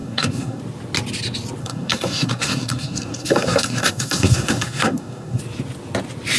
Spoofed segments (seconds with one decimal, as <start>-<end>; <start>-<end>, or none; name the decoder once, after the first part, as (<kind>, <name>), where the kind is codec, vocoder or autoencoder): 0.0-0.6 (codec, SNAC); 1.6-5.4